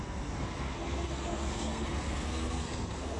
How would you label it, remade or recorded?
remade